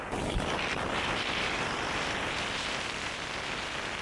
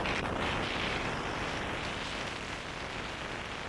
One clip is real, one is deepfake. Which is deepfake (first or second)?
first